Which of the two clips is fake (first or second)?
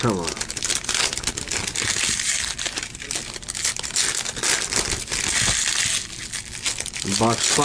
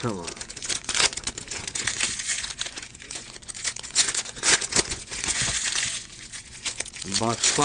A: second